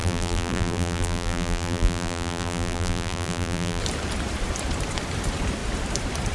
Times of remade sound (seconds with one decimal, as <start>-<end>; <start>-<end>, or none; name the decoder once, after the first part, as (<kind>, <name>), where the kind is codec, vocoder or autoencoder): 0.0-3.8 (vocoder, BigVGAN v2)